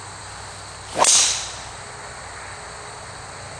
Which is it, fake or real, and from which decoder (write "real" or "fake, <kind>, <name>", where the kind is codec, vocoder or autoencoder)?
real